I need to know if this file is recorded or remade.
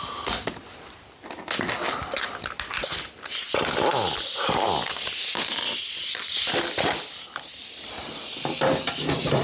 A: recorded